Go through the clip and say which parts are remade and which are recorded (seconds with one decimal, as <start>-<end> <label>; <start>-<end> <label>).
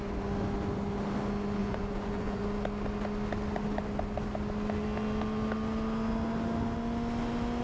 0.0-1.6 recorded; 1.6-2.4 remade; 2.4-7.6 recorded